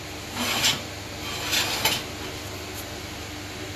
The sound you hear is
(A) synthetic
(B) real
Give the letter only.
B